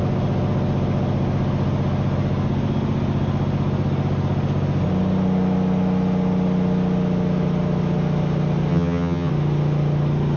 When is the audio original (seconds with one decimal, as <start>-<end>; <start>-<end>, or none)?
0.0-8.7; 9.3-10.4